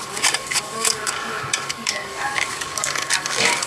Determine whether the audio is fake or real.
fake